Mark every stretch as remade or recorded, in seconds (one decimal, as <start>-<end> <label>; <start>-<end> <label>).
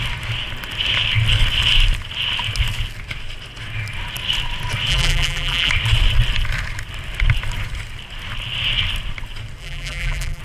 0.0-4.9 recorded; 4.9-5.7 remade; 5.7-9.6 recorded; 9.6-10.4 remade